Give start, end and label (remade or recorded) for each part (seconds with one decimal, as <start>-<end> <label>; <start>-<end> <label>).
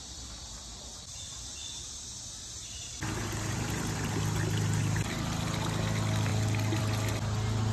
0.0-7.7 recorded